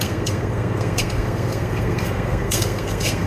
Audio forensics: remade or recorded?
remade